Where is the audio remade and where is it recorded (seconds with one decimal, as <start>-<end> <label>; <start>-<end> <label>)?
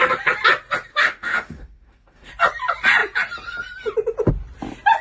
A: 0.0-0.9 recorded; 0.9-2.3 remade; 2.3-5.0 recorded